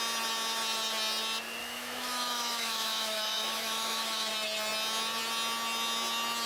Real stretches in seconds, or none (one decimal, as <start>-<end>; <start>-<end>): 0.0-1.6; 4.3-6.5